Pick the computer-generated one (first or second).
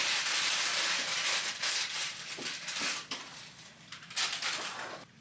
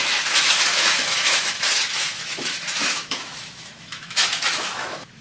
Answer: second